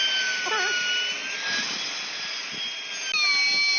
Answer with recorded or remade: recorded